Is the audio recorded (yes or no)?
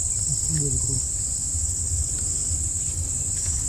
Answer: yes